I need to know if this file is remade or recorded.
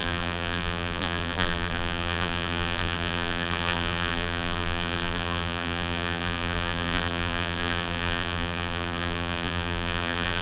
remade